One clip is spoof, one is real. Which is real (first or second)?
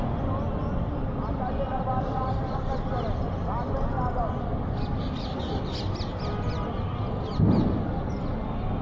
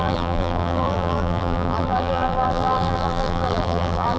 first